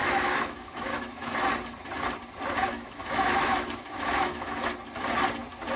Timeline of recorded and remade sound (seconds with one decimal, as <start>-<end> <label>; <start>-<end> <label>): 0.0-1.5 remade; 1.5-2.7 recorded; 2.7-4.7 remade; 4.7-5.8 recorded